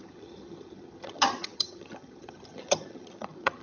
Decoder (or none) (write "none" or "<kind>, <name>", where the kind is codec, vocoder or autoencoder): vocoder, HiFi-GAN